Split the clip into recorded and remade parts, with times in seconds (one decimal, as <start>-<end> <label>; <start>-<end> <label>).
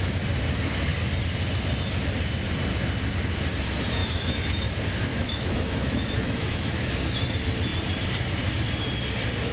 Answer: 0.0-4.0 recorded; 4.0-4.5 remade; 4.5-5.1 recorded; 5.1-6.9 remade; 6.9-9.5 recorded